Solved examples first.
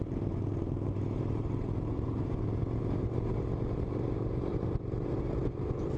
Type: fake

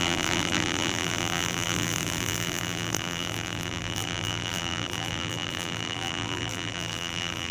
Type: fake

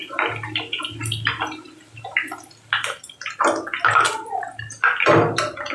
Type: real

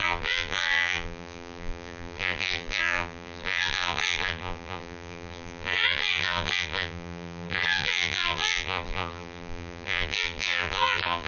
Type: fake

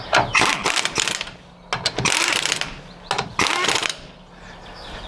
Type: real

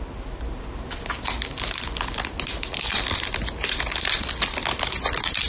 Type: fake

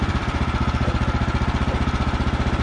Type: fake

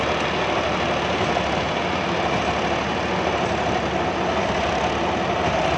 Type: real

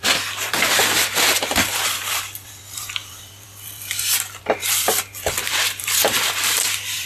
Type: fake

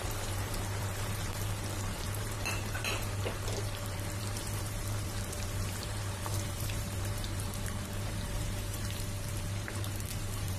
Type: fake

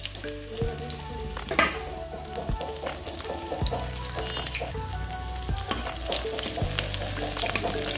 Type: real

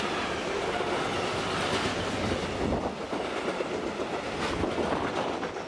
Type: real